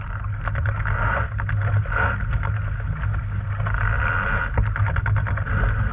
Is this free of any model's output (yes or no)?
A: yes